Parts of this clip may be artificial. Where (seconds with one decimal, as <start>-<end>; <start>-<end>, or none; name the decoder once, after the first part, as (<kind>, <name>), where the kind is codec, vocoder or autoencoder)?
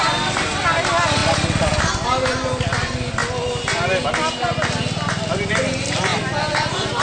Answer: none